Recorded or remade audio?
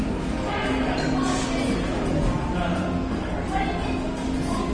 recorded